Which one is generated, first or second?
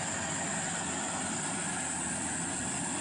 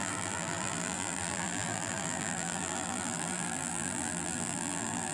second